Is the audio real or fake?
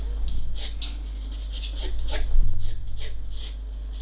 real